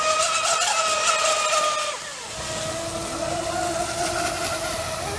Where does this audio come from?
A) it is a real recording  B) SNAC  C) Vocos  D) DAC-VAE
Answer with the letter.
A